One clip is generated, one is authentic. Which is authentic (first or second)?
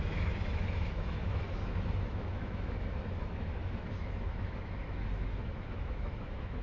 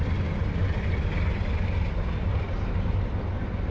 second